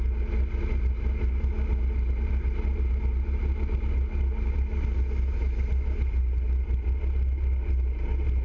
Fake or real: real